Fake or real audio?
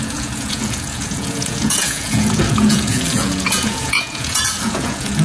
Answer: fake